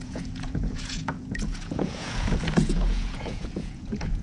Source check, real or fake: fake